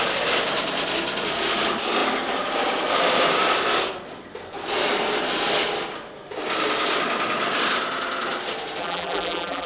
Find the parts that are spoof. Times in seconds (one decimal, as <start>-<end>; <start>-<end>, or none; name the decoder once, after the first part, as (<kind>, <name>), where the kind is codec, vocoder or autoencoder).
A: 8.8-9.7 (vocoder, BigVGAN v2)